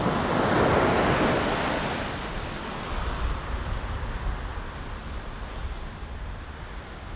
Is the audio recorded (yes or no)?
yes